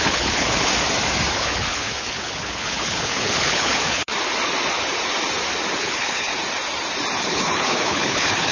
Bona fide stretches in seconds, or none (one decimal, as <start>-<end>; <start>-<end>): 0.7-1.3; 4.1-5.8; 6.3-7.2